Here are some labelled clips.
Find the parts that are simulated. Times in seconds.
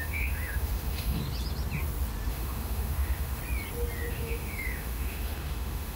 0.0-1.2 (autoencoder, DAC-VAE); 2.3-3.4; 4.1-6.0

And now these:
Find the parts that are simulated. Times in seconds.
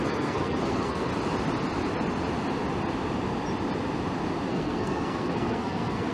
0.0-1.1 (codec, SNAC); 4.5-6.1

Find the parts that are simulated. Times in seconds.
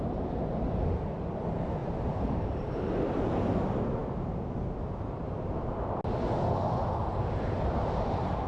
1.8-2.9 (vocoder, BigVGAN v2)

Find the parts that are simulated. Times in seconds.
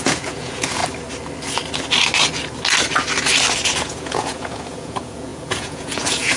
0.0-0.8 (vocoder, Vocos); 3.8-6.4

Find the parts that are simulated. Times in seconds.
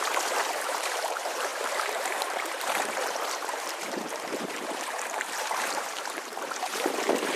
0.0-7.4 (vocoder, BigVGAN v2)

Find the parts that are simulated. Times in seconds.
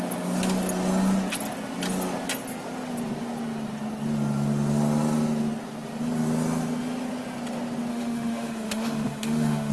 7.9-9.7 (autoencoder, DAC-VAE)